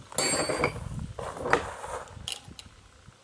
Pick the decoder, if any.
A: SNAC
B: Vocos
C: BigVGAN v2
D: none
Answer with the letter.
D